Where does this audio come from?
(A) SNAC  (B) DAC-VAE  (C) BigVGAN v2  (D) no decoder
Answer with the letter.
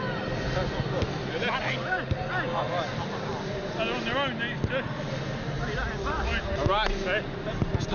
D